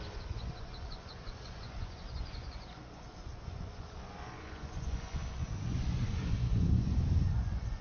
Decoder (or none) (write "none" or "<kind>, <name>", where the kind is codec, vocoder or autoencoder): vocoder, Vocos